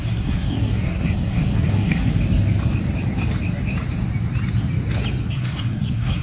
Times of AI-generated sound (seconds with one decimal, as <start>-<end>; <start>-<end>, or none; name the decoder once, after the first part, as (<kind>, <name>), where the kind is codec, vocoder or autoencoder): 0.0-2.1 (codec, SNAC); 5.3-6.2